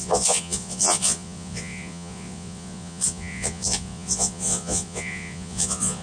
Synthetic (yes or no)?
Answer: yes